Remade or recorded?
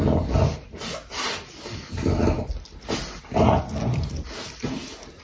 recorded